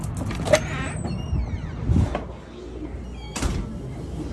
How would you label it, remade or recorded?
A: recorded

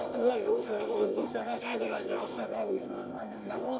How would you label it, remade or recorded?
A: remade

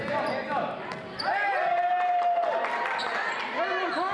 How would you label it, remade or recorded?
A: recorded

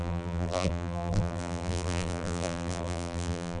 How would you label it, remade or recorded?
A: remade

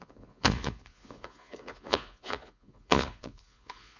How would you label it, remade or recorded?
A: remade